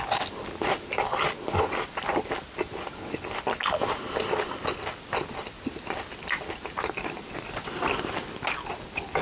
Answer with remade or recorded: recorded